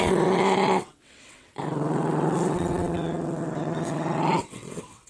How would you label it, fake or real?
fake